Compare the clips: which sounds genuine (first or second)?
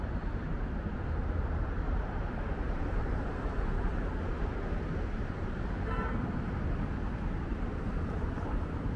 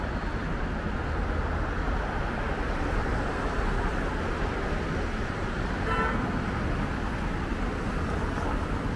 second